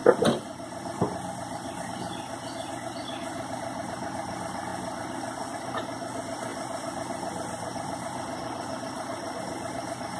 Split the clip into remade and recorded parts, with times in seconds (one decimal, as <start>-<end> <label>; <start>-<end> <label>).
0.0-1.8 remade; 1.8-4.7 recorded; 4.7-5.7 remade; 5.7-6.5 recorded; 6.5-9.4 remade; 9.4-10.2 recorded